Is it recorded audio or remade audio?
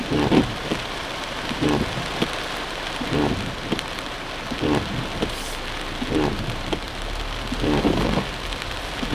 recorded